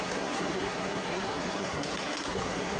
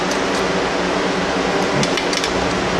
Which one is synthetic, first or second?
first